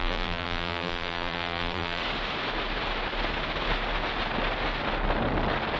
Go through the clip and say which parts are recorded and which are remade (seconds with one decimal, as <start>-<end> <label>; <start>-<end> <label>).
0.0-2.0 remade; 2.0-5.8 recorded